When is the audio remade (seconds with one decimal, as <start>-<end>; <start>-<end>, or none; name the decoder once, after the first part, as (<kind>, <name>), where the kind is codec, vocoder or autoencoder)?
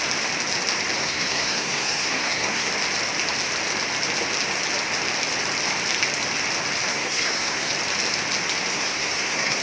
1.0-2.7 (codec, SNAC); 6.9-7.7; 8.7-9.6